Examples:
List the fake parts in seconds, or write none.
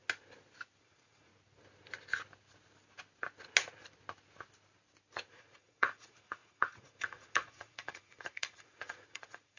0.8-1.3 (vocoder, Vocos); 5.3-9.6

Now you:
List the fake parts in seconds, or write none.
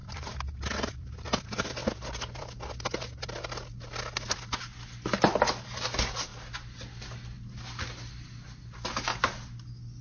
none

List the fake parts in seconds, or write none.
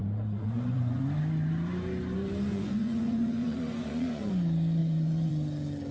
0.0-1.0 (vocoder, Vocos); 2.5-4.3; 4.8-5.3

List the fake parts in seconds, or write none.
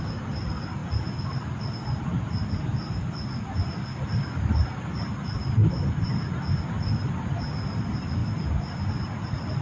none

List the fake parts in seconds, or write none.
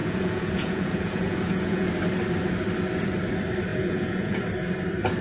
0.0-1.9 (vocoder, Vocos); 3.7-4.4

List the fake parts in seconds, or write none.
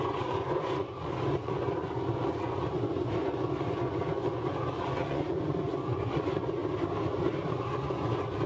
0.0-6.6 (vocoder, Vocos); 7.5-8.5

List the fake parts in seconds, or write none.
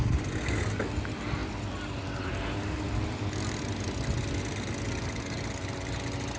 none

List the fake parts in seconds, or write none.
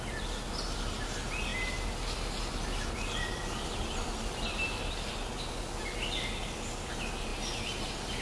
none